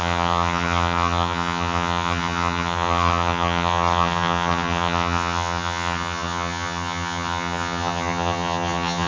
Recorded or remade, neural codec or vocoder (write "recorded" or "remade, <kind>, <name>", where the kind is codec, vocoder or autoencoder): remade, vocoder, HiFi-GAN